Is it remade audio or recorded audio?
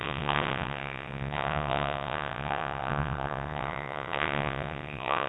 remade